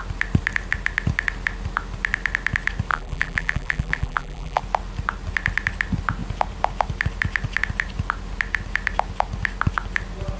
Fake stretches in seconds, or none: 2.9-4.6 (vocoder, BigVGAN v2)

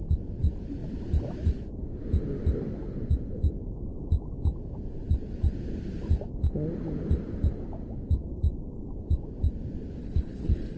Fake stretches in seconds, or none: 10.0-10.8 (codec, HILCodec)

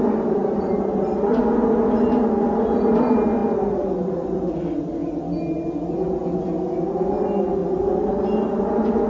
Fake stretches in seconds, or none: none